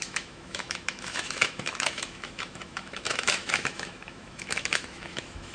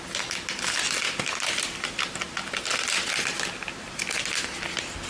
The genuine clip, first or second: second